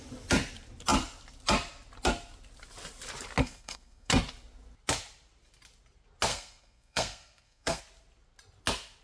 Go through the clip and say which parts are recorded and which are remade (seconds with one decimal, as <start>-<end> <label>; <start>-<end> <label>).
0.0-3.4 recorded; 3.4-4.1 remade; 4.1-6.3 recorded; 6.3-7.8 remade; 7.8-9.0 recorded